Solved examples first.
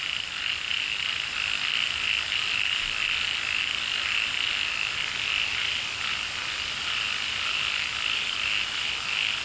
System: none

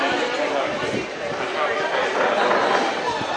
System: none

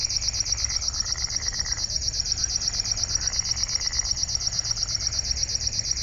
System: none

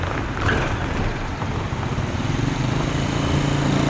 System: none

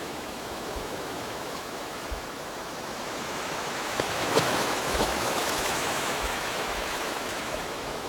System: autoencoder, DAC-VAE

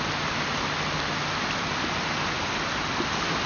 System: none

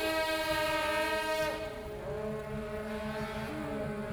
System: none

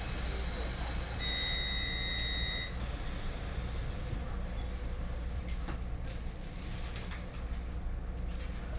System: none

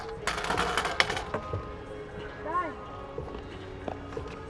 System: none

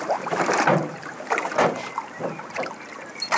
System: vocoder, BigVGAN v2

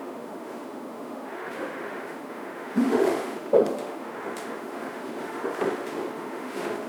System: autoencoder, DAC-VAE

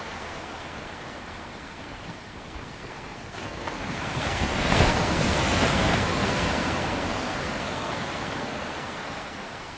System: codec, SNAC